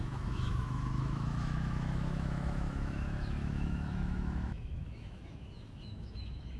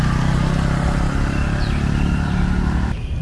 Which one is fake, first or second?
first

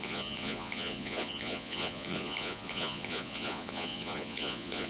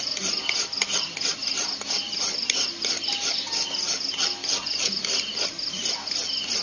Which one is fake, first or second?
first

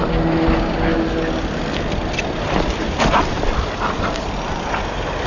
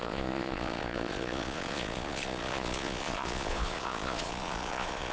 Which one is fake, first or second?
second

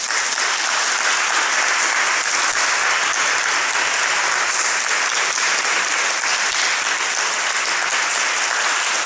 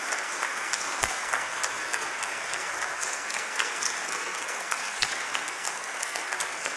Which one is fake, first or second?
second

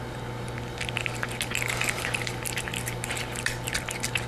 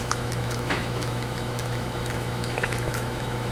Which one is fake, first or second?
second